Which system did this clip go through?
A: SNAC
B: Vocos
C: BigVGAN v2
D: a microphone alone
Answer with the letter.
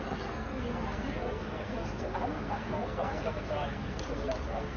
A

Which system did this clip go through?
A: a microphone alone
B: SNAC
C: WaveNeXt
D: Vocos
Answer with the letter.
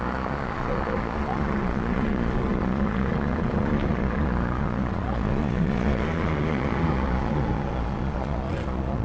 D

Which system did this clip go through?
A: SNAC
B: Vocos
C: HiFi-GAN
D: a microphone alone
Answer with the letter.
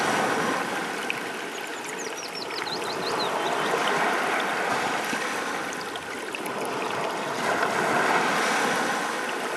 D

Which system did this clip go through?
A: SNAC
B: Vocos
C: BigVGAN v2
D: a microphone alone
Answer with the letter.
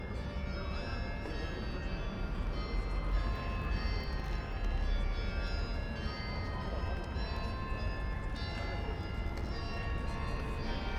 D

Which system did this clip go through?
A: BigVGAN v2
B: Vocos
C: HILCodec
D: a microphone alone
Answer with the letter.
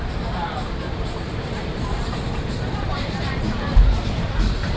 A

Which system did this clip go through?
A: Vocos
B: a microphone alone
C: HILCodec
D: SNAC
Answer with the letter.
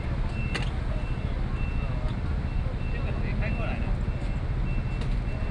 B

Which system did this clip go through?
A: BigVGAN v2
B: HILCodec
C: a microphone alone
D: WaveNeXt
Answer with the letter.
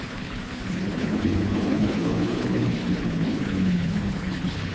B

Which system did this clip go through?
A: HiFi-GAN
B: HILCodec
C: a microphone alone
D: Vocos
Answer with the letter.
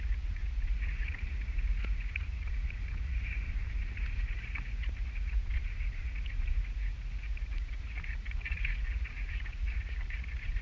D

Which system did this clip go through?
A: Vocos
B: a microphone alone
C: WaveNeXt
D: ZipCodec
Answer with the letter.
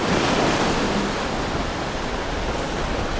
B